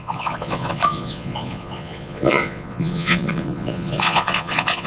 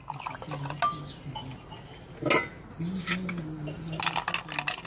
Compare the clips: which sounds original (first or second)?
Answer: second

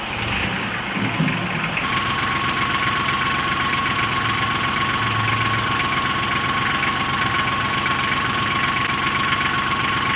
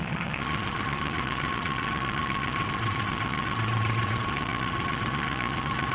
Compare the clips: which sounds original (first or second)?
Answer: first